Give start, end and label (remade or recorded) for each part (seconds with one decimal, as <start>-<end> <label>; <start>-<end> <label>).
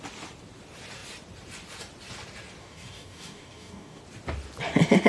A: 0.0-2.6 recorded; 2.6-4.0 remade; 4.0-5.1 recorded